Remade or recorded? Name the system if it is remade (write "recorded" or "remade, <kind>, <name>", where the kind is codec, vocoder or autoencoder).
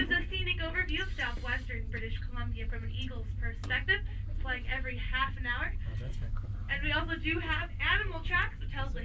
recorded